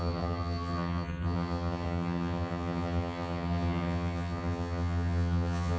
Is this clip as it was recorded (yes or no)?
no